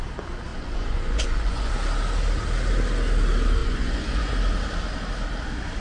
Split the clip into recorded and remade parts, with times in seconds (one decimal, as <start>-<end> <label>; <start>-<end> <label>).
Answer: 0.0-0.5 recorded; 0.5-1.7 remade; 1.7-3.6 recorded; 3.6-4.3 remade; 4.3-5.8 recorded

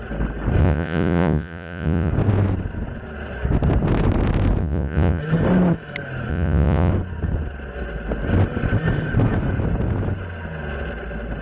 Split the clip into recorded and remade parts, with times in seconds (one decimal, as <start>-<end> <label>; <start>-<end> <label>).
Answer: 0.0-0.6 recorded; 0.6-2.1 remade; 2.1-4.6 recorded; 4.6-5.2 remade; 5.2-6.3 recorded; 6.3-6.9 remade; 6.9-11.4 recorded

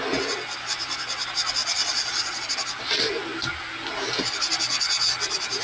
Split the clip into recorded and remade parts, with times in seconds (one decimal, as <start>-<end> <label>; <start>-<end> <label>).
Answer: 0.0-1.6 recorded; 1.6-2.5 remade; 2.5-5.6 recorded

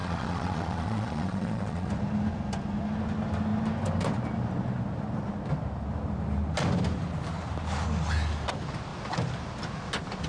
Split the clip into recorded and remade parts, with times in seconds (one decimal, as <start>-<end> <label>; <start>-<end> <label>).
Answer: 0.0-1.9 remade; 1.9-10.3 recorded

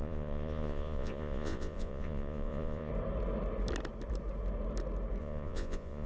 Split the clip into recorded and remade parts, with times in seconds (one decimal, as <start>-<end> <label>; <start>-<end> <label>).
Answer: 0.0-2.9 remade; 2.9-5.2 recorded; 5.2-6.1 remade

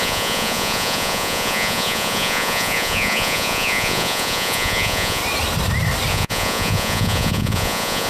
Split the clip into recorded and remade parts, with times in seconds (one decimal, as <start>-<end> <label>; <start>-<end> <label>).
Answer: 0.0-5.2 remade; 5.2-6.1 recorded; 6.1-8.1 remade

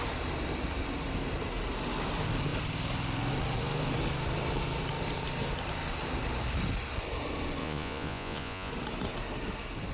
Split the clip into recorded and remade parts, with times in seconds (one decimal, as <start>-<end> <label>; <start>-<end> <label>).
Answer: 0.0-7.6 recorded; 7.6-8.7 remade; 8.7-9.9 recorded